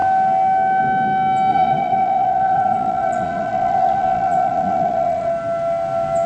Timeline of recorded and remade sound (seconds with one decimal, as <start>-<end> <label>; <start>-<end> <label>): 0.0-1.5 recorded; 1.5-5.3 remade; 5.3-6.3 recorded